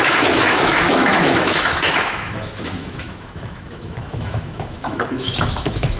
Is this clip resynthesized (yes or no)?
yes